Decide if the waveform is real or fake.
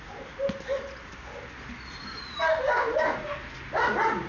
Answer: real